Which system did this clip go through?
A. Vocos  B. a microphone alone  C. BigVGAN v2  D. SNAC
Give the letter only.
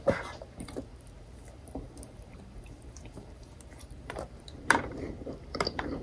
C